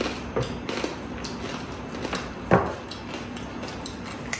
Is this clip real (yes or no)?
yes